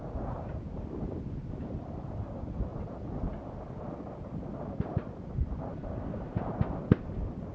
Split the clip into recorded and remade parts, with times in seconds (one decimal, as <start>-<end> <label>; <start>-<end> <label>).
0.0-7.5 recorded